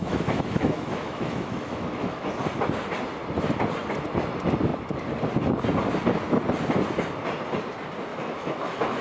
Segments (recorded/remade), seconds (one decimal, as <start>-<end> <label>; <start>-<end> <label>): 0.0-2.4 remade; 2.4-8.1 recorded; 8.1-9.0 remade